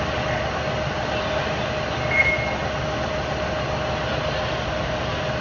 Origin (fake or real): real